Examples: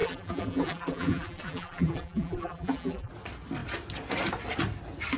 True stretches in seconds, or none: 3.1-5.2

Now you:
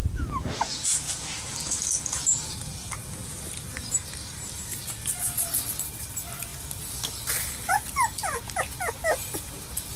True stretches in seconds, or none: 3.4-10.0

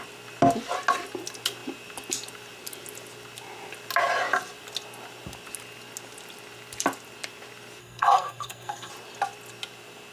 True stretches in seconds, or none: 0.0-7.8; 8.9-10.1

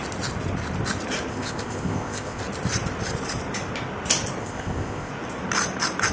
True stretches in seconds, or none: 0.0-1.3; 2.4-4.4; 5.1-6.1

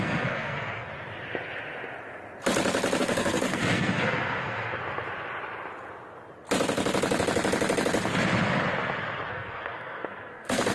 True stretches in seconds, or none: 0.9-3.0; 4.8-9.3

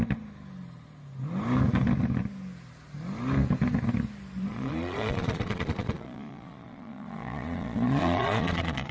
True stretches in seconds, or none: 0.0-4.5

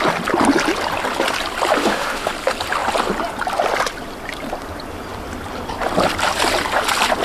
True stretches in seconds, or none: 0.0-1.8; 2.3-7.2

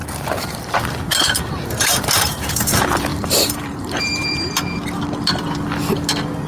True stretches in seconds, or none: 2.6-3.1; 4.5-6.5